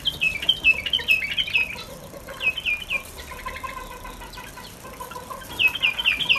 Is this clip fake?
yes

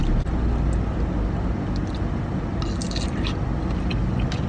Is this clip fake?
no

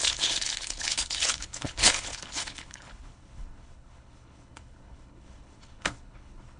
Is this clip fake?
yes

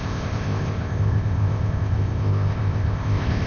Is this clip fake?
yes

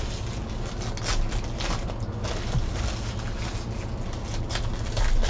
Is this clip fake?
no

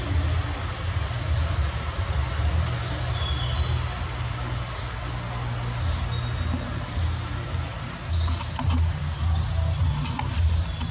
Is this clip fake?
no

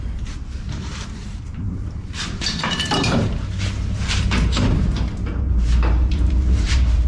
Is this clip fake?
yes